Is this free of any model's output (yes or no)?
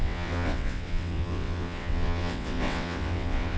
no